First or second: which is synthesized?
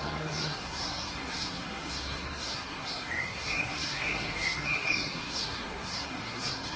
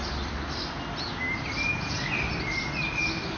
first